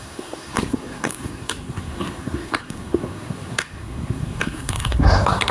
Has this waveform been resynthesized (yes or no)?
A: yes